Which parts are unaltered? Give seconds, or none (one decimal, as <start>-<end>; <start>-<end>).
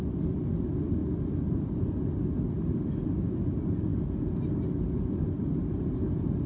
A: 0.0-6.5